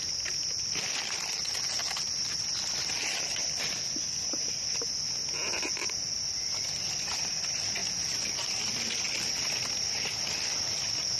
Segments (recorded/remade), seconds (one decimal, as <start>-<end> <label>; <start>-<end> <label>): 0.0-11.2 recorded